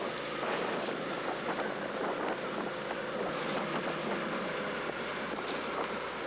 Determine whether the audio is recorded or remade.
recorded